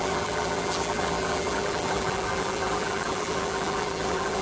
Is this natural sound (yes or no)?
no